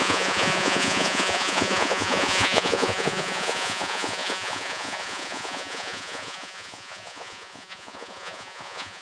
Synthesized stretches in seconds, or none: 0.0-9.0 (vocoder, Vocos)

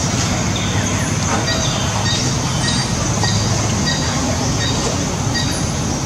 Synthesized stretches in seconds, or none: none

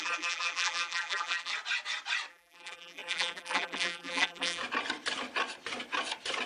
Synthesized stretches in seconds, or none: 0.0-1.5 (vocoder, BigVGAN v2); 2.3-4.6